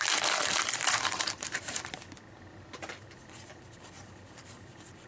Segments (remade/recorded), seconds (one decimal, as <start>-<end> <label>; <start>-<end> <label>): 0.0-0.8 recorded; 0.8-1.8 remade; 1.8-5.1 recorded

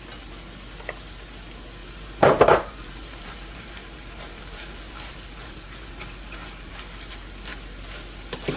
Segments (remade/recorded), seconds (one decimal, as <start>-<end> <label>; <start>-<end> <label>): 0.0-1.8 recorded; 1.8-6.7 remade; 6.7-8.6 recorded

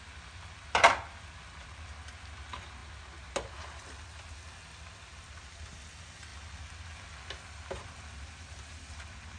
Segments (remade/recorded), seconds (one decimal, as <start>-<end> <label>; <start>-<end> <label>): 0.0-9.4 recorded

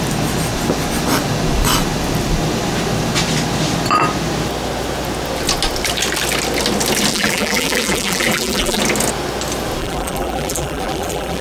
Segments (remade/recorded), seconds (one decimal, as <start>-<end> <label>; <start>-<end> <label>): 0.0-7.1 recorded; 7.1-8.8 remade; 8.8-9.8 recorded; 9.8-11.4 remade